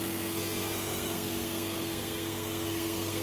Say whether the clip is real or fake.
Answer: fake